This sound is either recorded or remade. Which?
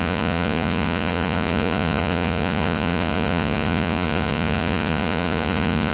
remade